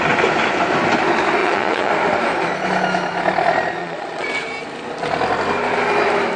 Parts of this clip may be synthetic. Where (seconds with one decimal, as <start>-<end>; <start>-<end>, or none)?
1.4-1.9; 3.8-4.3